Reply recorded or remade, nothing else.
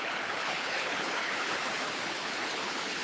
remade